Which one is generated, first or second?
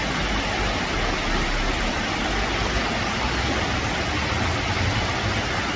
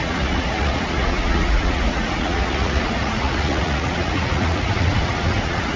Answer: second